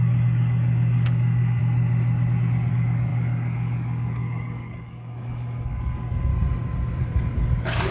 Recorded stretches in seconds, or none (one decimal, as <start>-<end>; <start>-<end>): 1.6-2.7; 6.3-7.0